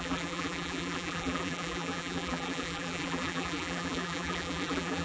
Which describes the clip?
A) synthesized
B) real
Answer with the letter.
A